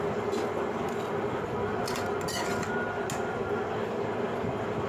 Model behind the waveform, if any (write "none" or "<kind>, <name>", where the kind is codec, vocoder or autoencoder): none